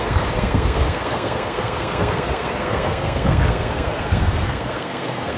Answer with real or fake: fake